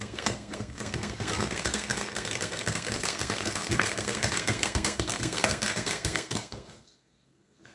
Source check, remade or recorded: remade